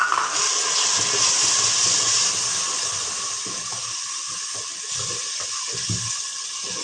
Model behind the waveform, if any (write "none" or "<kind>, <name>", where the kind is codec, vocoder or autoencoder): none